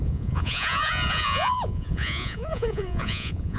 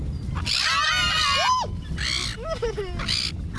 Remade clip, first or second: first